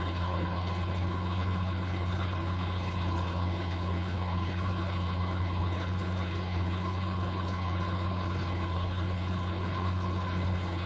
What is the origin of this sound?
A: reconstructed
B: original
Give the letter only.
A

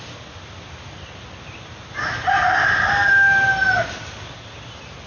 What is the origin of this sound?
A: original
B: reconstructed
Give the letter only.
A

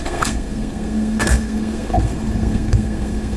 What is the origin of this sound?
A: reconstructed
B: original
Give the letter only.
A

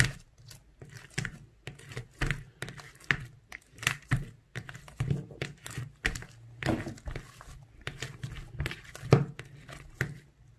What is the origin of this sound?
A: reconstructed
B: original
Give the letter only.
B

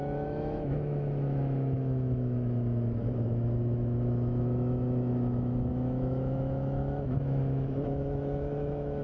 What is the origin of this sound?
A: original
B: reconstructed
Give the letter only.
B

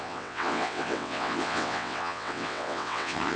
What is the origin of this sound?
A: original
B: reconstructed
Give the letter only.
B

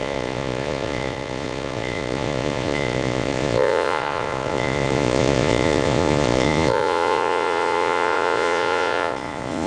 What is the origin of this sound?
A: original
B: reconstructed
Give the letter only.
B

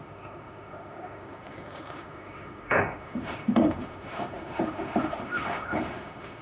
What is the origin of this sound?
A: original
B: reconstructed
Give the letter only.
B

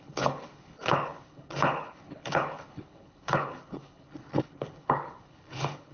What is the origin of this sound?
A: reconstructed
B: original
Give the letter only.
A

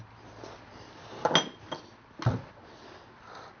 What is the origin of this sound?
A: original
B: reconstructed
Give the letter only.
A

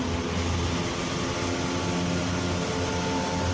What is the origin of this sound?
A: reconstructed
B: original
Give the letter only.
B